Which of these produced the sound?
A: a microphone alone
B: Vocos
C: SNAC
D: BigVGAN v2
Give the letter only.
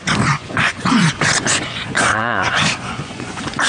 B